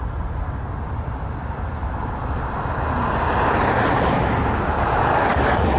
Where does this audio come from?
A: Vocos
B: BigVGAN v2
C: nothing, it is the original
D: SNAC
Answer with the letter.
C